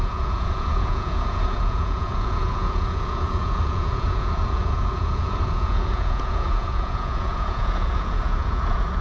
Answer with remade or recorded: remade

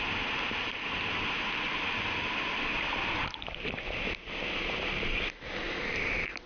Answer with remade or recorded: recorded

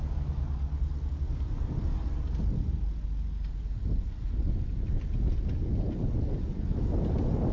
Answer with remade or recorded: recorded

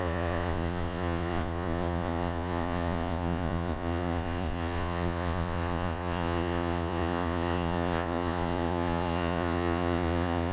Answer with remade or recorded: remade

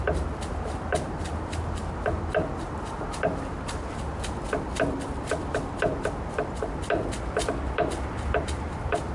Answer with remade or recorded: remade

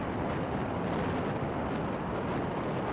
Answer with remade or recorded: recorded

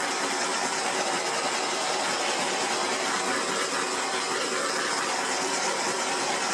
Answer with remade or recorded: recorded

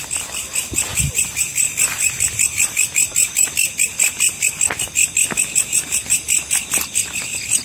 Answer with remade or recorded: recorded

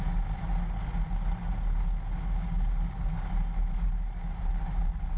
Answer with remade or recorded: recorded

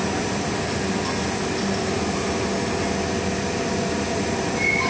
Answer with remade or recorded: recorded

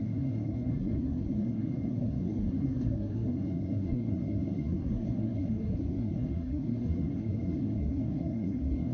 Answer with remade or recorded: remade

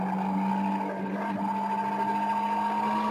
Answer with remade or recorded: recorded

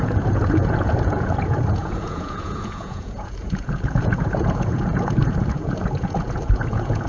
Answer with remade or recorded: remade